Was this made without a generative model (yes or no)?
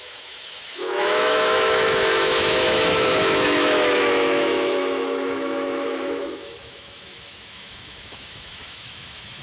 no